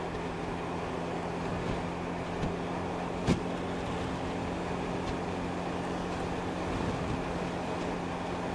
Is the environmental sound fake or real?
real